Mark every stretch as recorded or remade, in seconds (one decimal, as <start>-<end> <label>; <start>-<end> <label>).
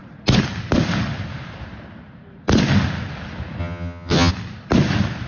0.0-3.6 recorded; 3.6-4.3 remade; 4.3-5.3 recorded